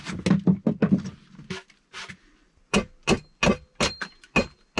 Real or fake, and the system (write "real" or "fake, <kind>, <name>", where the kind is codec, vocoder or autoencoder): real